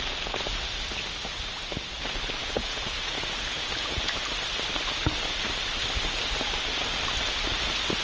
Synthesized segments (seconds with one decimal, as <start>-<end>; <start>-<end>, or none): 2.4-4.1